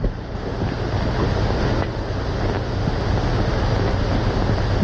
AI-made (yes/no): no